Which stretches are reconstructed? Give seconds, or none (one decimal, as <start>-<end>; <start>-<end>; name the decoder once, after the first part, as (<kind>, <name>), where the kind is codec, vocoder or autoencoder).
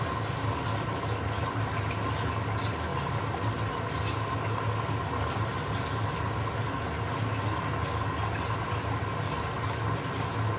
none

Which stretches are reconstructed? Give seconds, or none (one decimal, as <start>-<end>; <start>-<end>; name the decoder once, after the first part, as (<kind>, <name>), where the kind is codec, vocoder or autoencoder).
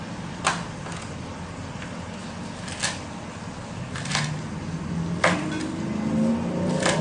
none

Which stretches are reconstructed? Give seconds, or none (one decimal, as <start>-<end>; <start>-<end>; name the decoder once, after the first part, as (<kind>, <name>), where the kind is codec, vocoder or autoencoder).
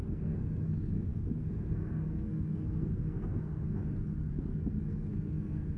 0.0-3.8 (codec, SNAC); 4.3-5.8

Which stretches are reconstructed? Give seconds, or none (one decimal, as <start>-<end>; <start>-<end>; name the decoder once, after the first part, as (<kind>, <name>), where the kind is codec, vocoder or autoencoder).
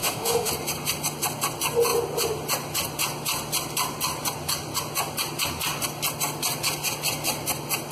0.0-0.5 (autoencoder, DAC-VAE)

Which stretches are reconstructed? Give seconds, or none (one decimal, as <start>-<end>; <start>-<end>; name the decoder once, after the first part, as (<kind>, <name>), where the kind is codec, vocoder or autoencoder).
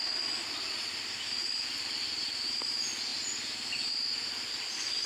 1.4-2.1 (vocoder, BigVGAN v2)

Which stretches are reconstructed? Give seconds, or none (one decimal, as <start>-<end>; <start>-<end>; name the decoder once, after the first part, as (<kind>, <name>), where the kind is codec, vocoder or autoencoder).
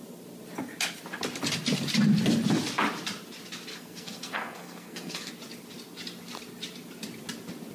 3.7-5.3 (codec, SNAC)